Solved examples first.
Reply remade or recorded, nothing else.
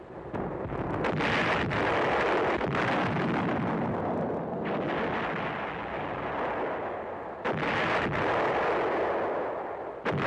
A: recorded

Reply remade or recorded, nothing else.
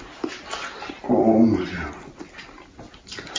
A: recorded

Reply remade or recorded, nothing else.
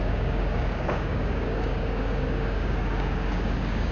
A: remade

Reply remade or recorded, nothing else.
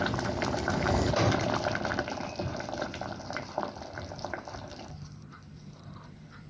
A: remade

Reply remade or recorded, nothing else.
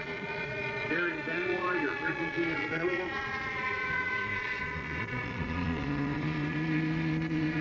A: remade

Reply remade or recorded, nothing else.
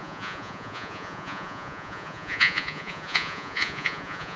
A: remade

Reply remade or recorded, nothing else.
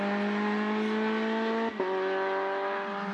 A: recorded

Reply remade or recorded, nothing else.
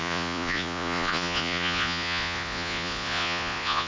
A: remade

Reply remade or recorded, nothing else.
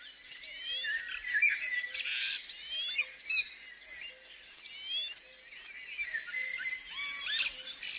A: recorded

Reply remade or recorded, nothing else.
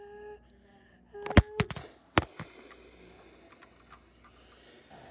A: recorded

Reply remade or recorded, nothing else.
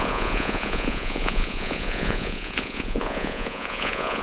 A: remade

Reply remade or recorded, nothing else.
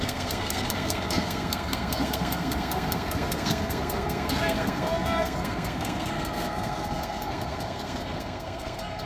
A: remade